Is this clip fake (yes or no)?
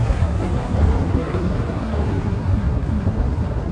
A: yes